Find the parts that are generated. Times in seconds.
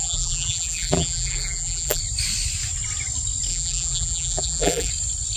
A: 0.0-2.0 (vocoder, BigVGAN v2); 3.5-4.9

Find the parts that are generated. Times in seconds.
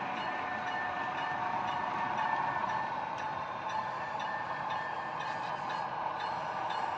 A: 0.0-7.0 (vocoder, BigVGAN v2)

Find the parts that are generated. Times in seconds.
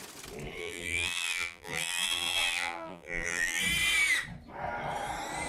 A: 0.6-3.6 (vocoder, BigVGAN v2)